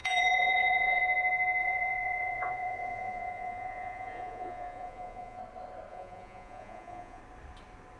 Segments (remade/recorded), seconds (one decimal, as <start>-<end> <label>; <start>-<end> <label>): 0.0-1.0 remade; 1.0-1.6 recorded; 1.6-5.4 remade; 5.4-5.9 recorded; 5.9-7.2 remade; 7.2-8.0 recorded